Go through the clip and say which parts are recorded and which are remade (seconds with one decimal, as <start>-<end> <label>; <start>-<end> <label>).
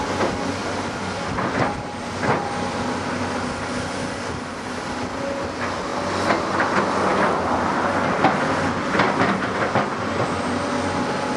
0.0-0.6 recorded; 0.6-5.1 remade; 5.1-5.9 recorded; 5.9-6.5 remade; 6.5-11.4 recorded